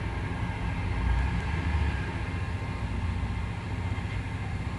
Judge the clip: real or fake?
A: real